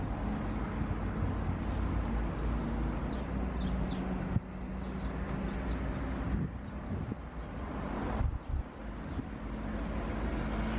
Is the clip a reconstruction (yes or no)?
no